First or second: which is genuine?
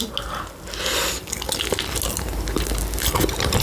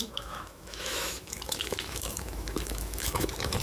first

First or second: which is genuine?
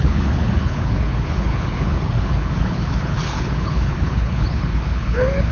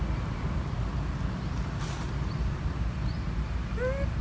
second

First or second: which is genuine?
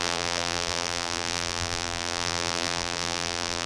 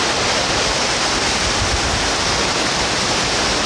second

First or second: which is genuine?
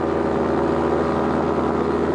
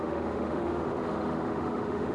first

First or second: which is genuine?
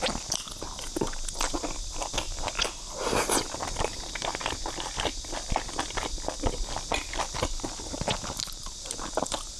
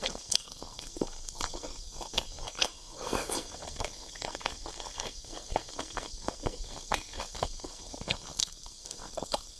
first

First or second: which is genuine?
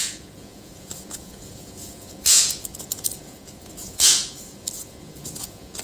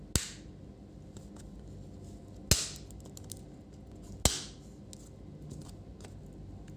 second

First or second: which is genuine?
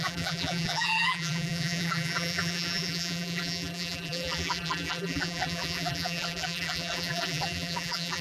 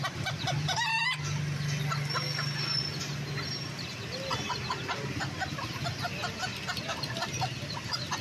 second